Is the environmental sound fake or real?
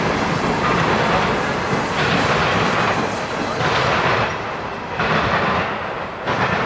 real